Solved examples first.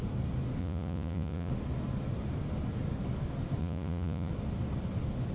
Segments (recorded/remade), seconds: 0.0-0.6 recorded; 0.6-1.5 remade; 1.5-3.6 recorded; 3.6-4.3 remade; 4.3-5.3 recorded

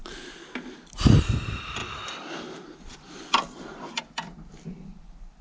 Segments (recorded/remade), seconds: 0.0-5.4 recorded

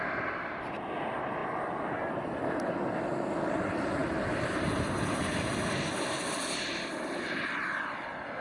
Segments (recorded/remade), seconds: 0.0-8.4 recorded

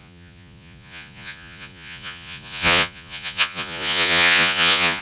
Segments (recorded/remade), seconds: 0.0-5.0 remade

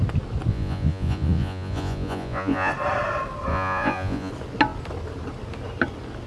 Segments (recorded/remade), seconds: 0.0-0.5 recorded; 0.5-2.7 remade; 2.7-3.5 recorded; 3.5-4.3 remade; 4.3-6.3 recorded

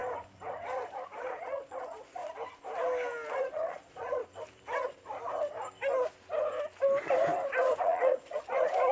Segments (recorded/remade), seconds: 0.0-1.2 recorded; 1.2-2.2 remade; 2.2-3.3 recorded; 3.3-4.2 remade; 4.2-7.8 recorded; 7.8-8.9 remade

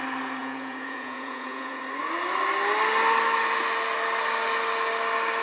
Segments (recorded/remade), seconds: 0.0-0.4 recorded; 0.4-1.8 remade; 1.8-5.4 recorded

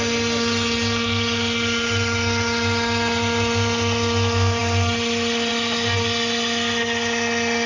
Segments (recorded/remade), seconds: 0.0-7.7 recorded